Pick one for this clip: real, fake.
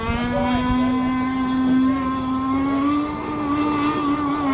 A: real